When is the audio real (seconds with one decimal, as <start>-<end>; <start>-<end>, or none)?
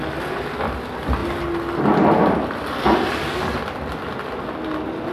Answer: 0.0-5.1